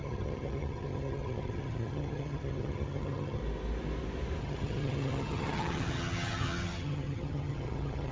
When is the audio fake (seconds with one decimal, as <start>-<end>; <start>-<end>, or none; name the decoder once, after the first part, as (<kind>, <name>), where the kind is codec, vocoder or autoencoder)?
0.0-3.4 (vocoder, HiFi-GAN); 4.4-8.1